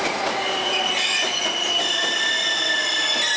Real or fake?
fake